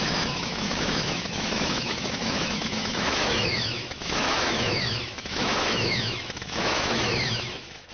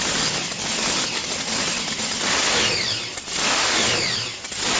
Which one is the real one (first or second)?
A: second